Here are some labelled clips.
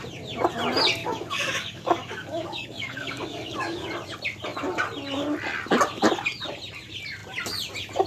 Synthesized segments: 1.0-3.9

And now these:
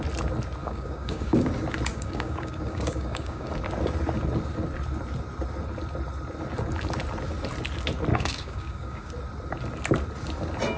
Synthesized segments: 0.6-1.5; 1.9-3.5; 8.1-9.1